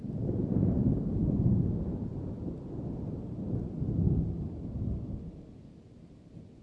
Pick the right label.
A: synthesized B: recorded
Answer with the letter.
B